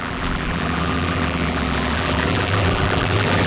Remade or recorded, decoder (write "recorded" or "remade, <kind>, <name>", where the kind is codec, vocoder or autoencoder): remade, vocoder, BigVGAN v2